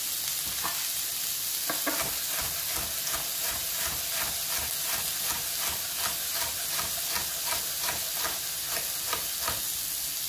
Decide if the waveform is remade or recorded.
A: recorded